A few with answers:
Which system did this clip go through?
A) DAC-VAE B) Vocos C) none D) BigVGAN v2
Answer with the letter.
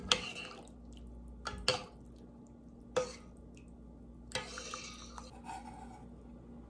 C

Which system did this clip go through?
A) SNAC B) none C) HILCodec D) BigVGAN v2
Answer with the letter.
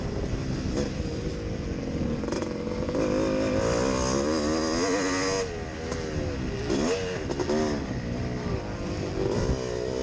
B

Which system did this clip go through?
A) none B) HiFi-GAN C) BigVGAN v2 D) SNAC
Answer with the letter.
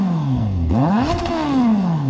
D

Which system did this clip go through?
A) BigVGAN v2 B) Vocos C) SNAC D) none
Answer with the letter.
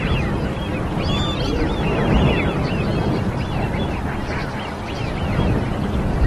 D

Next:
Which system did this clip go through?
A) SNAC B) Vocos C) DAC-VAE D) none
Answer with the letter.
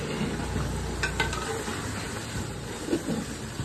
D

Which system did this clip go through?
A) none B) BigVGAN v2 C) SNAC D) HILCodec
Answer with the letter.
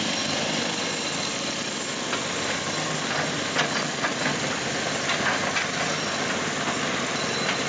A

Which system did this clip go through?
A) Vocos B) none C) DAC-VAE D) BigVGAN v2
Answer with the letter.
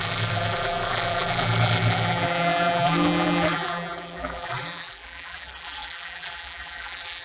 D